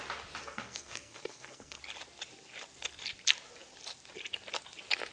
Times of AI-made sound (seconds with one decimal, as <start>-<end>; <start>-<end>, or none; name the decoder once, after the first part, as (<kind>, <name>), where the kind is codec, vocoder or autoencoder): 0.4-1.8 (codec, SNAC)